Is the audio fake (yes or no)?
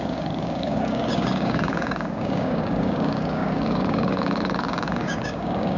yes